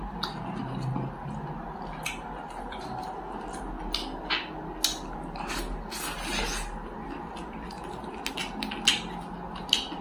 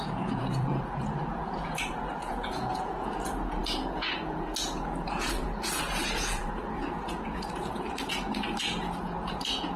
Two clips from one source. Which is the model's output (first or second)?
second